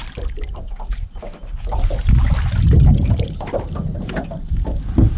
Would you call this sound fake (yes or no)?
no